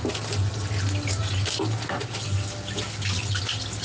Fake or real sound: real